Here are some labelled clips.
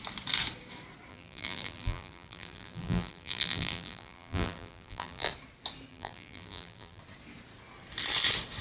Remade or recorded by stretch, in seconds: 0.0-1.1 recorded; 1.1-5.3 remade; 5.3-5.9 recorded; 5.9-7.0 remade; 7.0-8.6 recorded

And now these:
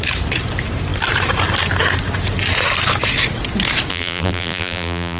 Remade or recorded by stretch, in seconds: 0.0-3.9 recorded; 3.9-5.2 remade

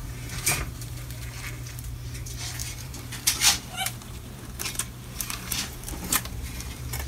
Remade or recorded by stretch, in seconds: 0.0-1.2 remade; 1.2-2.6 recorded; 2.6-7.1 remade

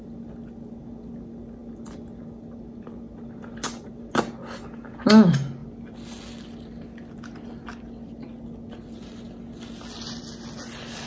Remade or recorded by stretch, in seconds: 0.0-11.1 recorded

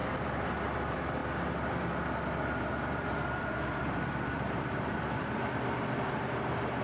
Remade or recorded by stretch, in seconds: 0.0-1.2 remade; 1.2-3.4 recorded; 3.4-6.8 remade

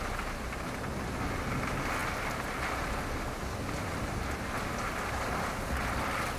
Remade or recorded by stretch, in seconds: 0.0-6.4 recorded

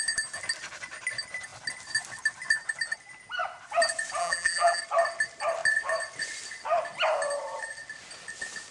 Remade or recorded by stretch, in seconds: 0.0-4.2 recorded; 4.2-4.8 remade; 4.8-8.7 recorded

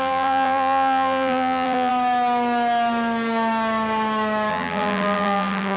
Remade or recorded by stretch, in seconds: 0.0-1.9 remade; 1.9-4.5 recorded; 4.5-5.8 remade